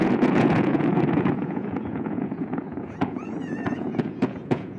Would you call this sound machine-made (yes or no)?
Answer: yes